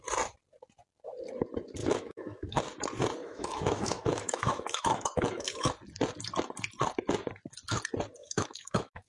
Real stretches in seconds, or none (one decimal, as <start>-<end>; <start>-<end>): 0.0-1.8; 2.6-3.2; 5.7-8.2